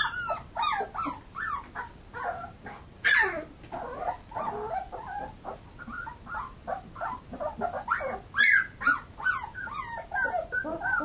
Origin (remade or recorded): recorded